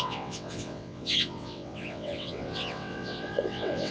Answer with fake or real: fake